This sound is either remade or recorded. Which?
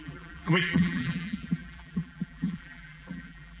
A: remade